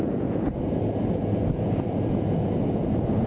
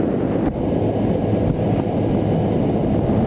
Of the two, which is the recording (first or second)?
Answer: second